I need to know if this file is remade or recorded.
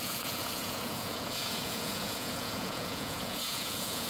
remade